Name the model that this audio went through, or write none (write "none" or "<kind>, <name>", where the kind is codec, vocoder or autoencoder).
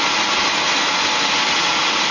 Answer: none